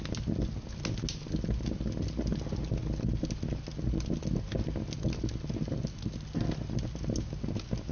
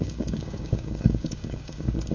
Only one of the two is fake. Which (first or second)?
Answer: second